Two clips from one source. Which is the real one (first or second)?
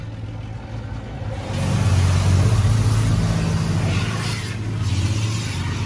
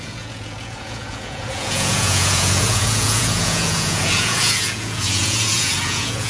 first